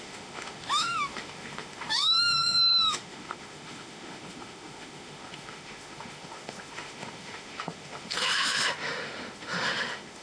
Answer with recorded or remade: remade